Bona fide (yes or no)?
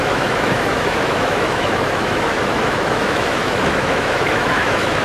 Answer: no